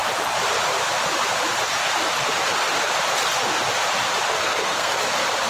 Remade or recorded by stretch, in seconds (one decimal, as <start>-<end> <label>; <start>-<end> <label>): 0.0-4.4 recorded; 4.4-5.0 remade; 5.0-5.5 recorded